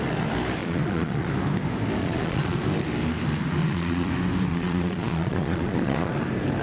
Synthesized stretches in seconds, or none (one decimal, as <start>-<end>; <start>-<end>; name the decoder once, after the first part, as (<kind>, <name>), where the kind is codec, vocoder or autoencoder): 0.6-1.3 (vocoder, Vocos); 2.0-2.6; 3.6-4.1; 4.5-6.1

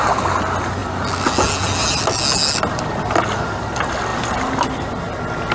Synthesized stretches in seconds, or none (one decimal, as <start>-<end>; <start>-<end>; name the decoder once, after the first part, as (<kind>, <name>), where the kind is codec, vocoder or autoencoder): none

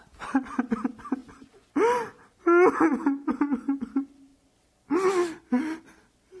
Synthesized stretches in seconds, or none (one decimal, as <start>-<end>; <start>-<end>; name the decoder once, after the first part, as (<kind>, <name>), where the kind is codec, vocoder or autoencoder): none